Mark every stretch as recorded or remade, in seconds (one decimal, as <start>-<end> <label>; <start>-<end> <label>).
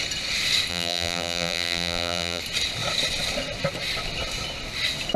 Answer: 0.0-0.7 recorded; 0.7-2.4 remade; 2.4-5.2 recorded